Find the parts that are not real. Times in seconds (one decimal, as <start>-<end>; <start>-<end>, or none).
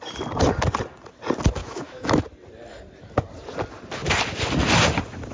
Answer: 1.6-2.2